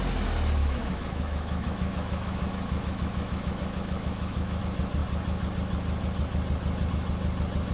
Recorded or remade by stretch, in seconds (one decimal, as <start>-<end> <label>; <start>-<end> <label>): 0.0-0.6 recorded; 0.6-4.6 remade; 4.6-7.7 recorded